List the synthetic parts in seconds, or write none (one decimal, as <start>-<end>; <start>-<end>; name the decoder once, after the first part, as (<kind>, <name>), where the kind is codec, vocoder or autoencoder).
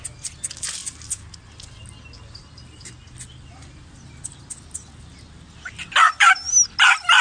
none